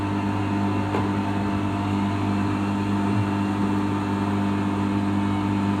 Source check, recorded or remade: recorded